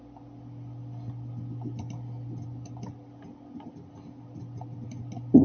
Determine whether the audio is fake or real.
real